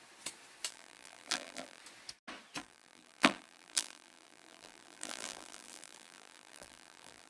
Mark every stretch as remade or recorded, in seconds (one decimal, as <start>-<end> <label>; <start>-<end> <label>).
0.0-0.7 recorded; 0.7-1.8 remade; 1.8-2.6 recorded; 2.6-7.3 remade

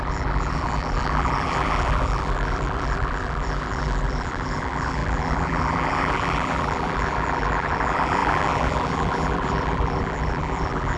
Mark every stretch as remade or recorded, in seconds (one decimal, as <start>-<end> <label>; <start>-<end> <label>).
0.0-11.0 remade

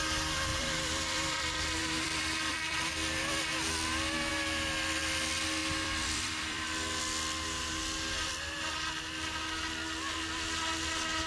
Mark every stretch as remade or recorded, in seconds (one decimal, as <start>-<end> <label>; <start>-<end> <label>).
0.0-0.5 recorded; 0.5-2.9 remade; 2.9-5.6 recorded; 5.6-7.0 remade; 7.0-11.3 recorded

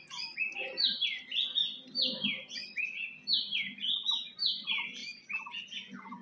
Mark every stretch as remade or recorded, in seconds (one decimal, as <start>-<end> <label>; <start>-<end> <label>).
0.0-6.2 recorded

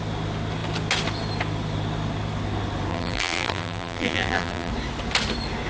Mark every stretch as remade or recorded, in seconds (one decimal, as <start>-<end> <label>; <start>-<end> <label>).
0.0-2.9 recorded; 2.9-4.7 remade; 4.7-5.7 recorded

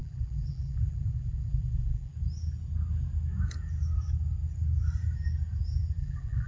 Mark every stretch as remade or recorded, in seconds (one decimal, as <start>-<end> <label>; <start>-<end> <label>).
0.0-2.1 remade; 2.1-6.0 recorded; 6.0-6.5 remade

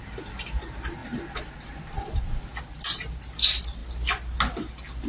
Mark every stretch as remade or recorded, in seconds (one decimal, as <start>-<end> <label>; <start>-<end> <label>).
0.0-1.0 recorded; 1.0-2.5 remade; 2.5-5.1 recorded

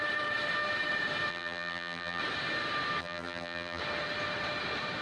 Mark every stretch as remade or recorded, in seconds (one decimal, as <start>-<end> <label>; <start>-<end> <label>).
0.0-1.3 recorded; 1.3-2.2 remade; 2.2-3.0 recorded; 3.0-3.8 remade; 3.8-5.0 recorded